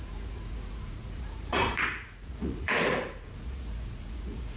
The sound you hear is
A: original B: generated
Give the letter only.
B